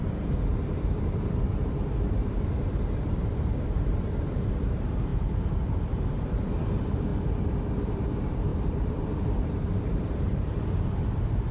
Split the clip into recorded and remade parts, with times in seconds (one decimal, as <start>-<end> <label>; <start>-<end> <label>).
0.0-7.1 remade; 7.1-7.7 recorded; 7.7-11.5 remade